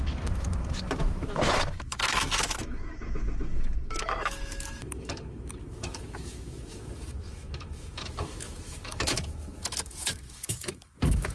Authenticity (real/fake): fake